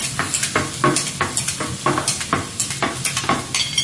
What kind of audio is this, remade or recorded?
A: recorded